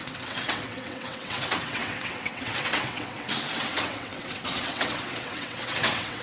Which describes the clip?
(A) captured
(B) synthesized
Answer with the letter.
B